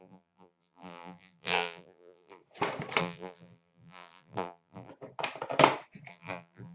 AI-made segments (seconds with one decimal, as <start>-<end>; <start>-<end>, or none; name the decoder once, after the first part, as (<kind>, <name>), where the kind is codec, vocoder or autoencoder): 0.0-2.4 (vocoder, BigVGAN v2); 3.0-4.9; 6.1-6.7